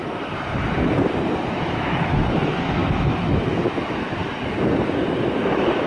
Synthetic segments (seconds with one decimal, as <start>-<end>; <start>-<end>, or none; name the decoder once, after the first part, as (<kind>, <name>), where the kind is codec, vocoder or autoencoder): 1.5-4.2 (autoencoder, DAC-VAE); 5.3-5.9